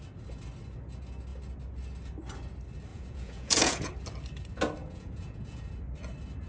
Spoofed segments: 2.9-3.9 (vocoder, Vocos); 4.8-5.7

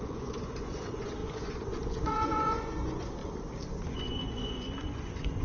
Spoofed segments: 0.0-3.2 (vocoder, Vocos); 3.7-5.4

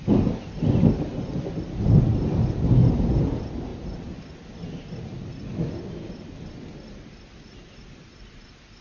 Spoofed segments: none

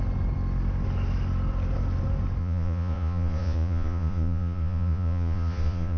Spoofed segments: 2.4-6.0 (vocoder, Vocos)

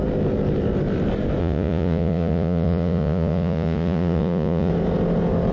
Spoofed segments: 1.4-4.7 (vocoder, Vocos)

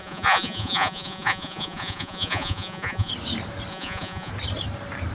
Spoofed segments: 0.0-3.1 (vocoder, Vocos); 3.7-4.3

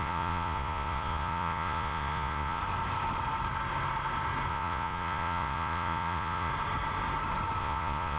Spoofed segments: 0.0-2.6 (vocoder, Vocos); 4.5-6.5; 7.6-8.2